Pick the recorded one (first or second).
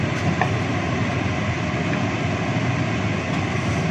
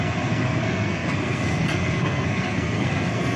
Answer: first